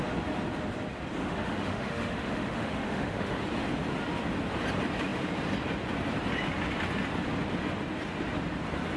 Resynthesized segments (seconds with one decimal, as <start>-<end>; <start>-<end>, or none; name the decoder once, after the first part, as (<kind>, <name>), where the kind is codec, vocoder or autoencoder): 1.2-3.4 (autoencoder, DAC-VAE)